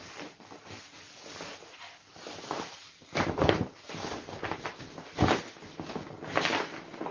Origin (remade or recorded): recorded